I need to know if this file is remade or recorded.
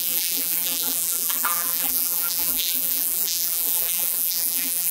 remade